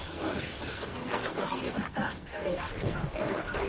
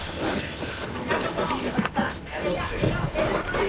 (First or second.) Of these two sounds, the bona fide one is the second